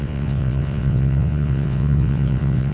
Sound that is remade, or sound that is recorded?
remade